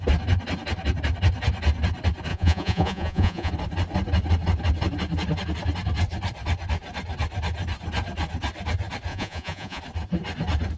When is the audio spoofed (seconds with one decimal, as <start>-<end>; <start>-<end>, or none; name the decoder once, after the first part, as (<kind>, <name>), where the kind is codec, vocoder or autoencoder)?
2.3-3.5 (vocoder, Vocos); 9.1-9.8